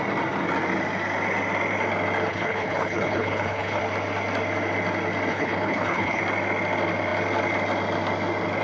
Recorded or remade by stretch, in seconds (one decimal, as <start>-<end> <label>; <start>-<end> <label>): 0.0-2.3 recorded; 2.3-3.8 remade; 3.8-5.3 recorded; 5.3-6.2 remade; 6.2-8.6 recorded